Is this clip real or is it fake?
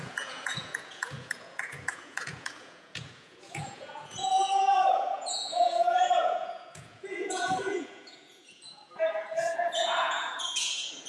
fake